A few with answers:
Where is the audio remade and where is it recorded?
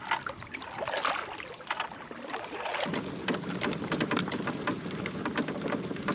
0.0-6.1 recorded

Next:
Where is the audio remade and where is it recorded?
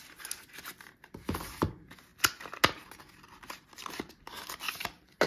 0.0-5.3 recorded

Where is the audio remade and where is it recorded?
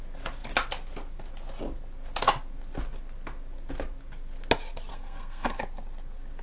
0.0-4.9 recorded; 4.9-5.6 remade; 5.6-6.4 recorded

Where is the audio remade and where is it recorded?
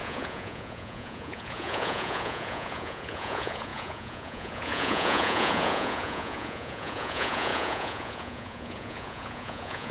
0.0-9.9 remade